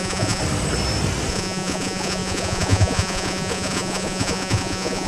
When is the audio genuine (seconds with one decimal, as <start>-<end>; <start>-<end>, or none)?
0.4-1.3